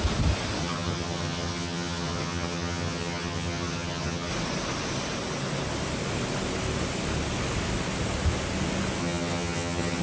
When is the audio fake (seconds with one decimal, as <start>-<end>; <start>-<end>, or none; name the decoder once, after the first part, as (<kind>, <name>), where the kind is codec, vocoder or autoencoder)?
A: 0.6-4.3 (vocoder, HiFi-GAN); 9.0-10.0